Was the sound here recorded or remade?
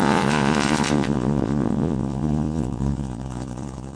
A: remade